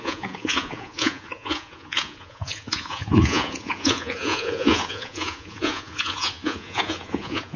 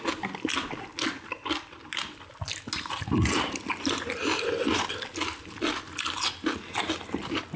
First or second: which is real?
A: second